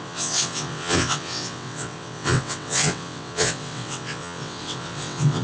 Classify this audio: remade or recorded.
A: remade